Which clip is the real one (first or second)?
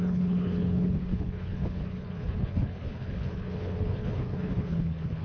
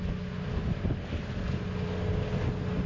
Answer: second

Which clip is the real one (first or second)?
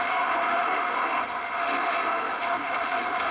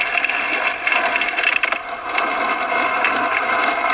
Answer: second